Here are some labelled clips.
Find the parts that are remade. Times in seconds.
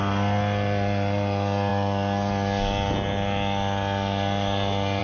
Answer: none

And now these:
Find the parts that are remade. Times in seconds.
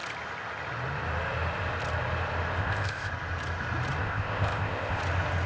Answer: 2.6-3.1 (codec, ZipCodec); 4.0-5.0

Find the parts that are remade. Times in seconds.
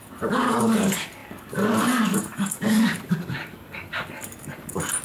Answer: 0.0-5.0 (codec, DAC)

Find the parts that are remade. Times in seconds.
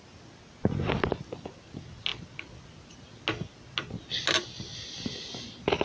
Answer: none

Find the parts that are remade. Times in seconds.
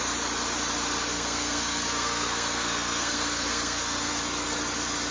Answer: 1.1-4.2 (codec, SNAC)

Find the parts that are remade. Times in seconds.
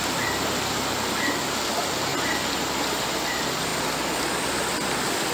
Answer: none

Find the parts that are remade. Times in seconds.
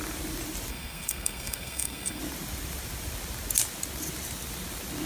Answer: 0.7-2.2 (codec, SNAC)